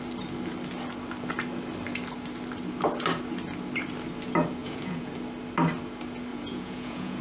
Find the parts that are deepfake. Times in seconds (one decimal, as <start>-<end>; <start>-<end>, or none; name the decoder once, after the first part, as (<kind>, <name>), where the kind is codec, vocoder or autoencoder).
4.6-5.1 (vocoder, Vocos); 6.3-7.2